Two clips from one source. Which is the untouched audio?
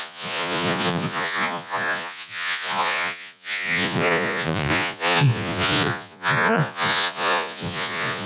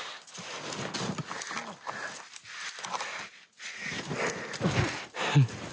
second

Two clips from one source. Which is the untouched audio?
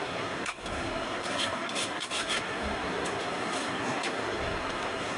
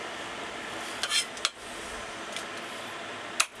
second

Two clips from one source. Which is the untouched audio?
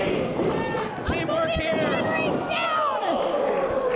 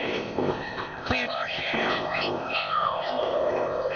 first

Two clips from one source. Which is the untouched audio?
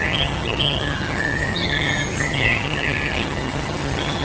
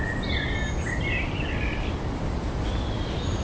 second